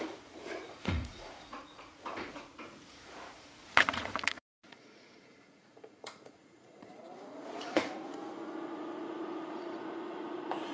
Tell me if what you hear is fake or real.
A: fake